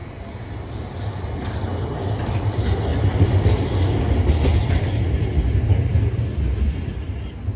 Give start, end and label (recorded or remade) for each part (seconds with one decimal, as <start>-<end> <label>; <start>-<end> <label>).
0.0-7.6 recorded